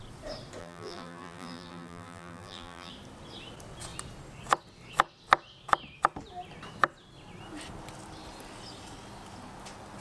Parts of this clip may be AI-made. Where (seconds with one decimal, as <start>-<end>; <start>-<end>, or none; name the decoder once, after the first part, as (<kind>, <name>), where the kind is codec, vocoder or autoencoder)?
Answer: 0.6-2.9 (vocoder, BigVGAN v2)